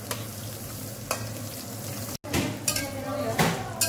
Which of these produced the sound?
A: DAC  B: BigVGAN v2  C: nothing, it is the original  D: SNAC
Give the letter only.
C